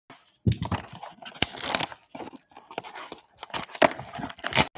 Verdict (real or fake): real